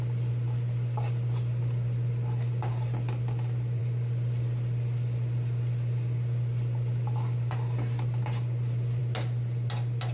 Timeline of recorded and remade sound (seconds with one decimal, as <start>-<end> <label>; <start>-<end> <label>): 0.0-10.1 recorded